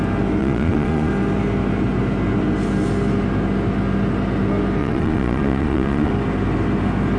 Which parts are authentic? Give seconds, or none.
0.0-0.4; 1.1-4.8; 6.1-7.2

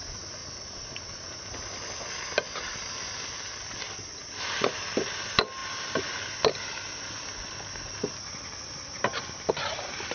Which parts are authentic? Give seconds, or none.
0.0-10.1

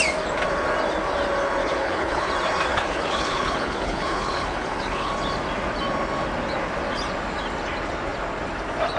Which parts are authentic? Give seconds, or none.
0.0-1.6; 2.3-2.7; 5.1-9.0

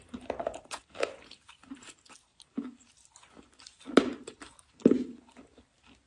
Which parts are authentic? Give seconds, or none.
0.0-6.1